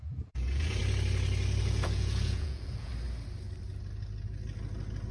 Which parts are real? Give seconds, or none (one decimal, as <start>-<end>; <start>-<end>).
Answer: 0.8-1.6; 2.9-5.1